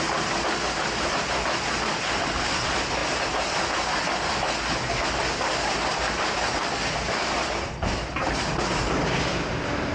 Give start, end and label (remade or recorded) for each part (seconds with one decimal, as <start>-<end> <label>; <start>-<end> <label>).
0.0-9.9 recorded